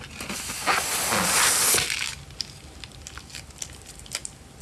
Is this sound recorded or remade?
recorded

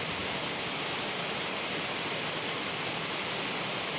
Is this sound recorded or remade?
recorded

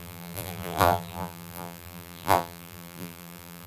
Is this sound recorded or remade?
remade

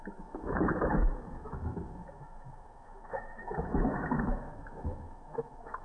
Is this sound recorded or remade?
remade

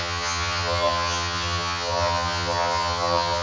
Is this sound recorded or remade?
remade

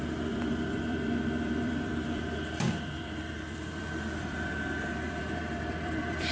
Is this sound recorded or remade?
remade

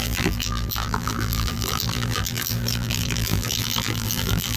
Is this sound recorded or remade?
remade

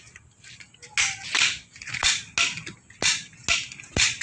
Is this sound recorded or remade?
recorded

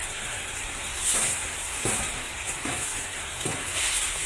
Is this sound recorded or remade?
remade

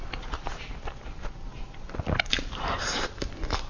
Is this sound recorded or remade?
recorded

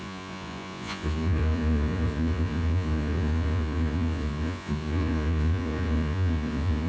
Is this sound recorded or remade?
remade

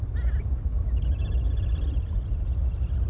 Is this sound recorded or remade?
recorded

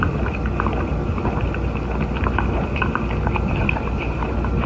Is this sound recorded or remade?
recorded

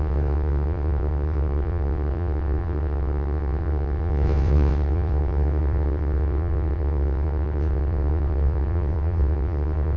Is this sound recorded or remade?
remade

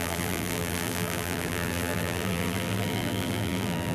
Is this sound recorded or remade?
remade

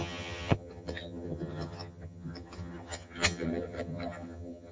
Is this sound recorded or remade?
remade